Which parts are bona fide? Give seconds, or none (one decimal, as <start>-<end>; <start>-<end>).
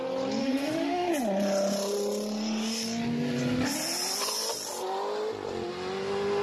0.0-0.4; 1.1-6.4